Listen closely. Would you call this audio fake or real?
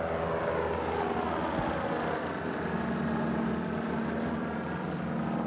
real